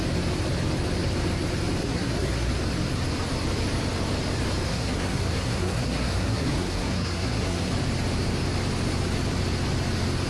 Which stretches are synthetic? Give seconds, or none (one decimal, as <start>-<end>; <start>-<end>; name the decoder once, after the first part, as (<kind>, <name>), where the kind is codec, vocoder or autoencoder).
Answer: 1.8-2.5 (codec, SNAC); 4.7-7.7